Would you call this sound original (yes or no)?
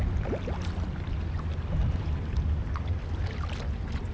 yes